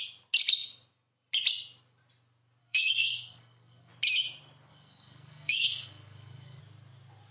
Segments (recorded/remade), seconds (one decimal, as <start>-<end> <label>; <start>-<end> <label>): 0.0-2.6 recorded; 2.6-3.9 remade; 3.9-4.7 recorded; 4.7-6.6 remade; 6.6-7.3 recorded